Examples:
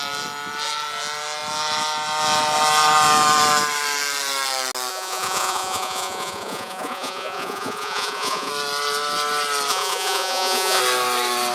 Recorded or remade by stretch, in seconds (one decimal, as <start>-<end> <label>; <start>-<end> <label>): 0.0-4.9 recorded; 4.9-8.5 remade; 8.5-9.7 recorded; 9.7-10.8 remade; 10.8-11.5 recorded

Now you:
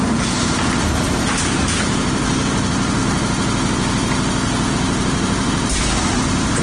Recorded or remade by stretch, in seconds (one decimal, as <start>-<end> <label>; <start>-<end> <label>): 0.0-3.0 remade; 3.0-4.7 recorded; 4.7-6.6 remade

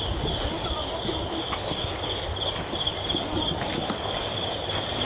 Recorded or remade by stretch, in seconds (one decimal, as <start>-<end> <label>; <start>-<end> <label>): 0.0-5.0 recorded

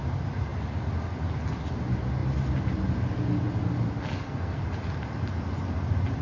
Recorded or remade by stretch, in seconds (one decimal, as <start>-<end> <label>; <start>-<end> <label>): 0.0-4.1 recorded; 4.1-4.6 remade; 4.6-6.2 recorded